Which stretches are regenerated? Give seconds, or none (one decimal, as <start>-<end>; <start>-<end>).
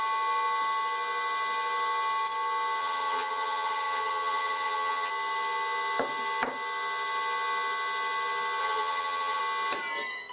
2.8-5.1; 8.6-9.4